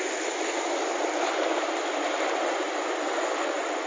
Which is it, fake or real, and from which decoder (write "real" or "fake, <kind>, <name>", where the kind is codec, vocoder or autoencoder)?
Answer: real